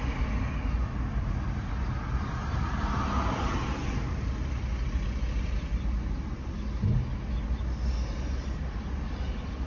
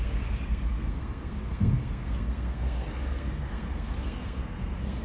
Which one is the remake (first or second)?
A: second